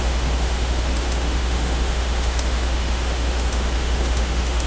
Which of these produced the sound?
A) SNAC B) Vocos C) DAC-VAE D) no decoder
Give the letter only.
C